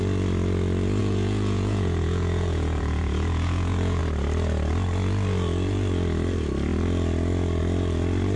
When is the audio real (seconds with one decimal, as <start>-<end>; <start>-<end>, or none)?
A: 0.0-1.0; 4.0-8.4